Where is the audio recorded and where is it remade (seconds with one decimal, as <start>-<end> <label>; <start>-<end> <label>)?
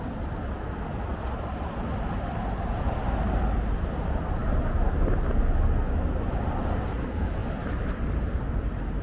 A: 0.0-9.0 recorded